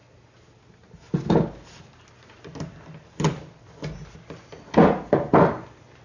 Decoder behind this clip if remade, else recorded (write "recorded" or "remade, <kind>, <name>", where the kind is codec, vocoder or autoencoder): recorded